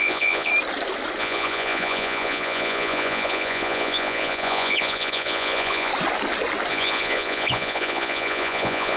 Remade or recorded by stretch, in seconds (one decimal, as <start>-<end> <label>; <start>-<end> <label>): 0.0-0.5 remade; 0.5-1.2 recorded; 1.2-5.9 remade; 5.9-6.7 recorded; 6.7-9.0 remade